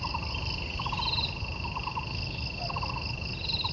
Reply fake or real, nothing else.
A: real